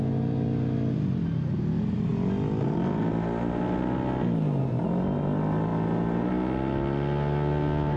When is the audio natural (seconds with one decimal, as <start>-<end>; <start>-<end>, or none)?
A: 0.0-8.0